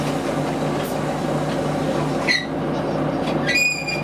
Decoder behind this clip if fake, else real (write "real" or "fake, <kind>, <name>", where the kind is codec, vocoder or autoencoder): real